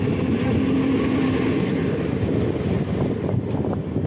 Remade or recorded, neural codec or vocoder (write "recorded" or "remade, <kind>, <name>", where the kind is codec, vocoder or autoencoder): recorded